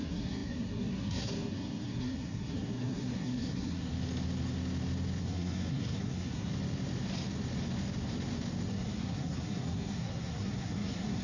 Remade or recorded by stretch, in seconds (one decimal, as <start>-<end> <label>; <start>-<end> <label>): 0.0-3.9 remade; 3.9-5.2 recorded; 5.2-6.5 remade; 6.5-8.7 recorded; 8.7-11.2 remade